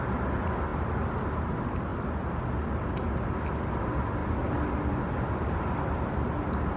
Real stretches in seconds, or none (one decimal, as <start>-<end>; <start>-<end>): 0.0-0.7; 1.4-6.8